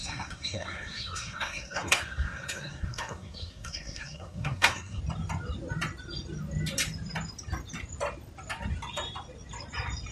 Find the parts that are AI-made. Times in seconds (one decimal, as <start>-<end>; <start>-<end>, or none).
0.0-5.0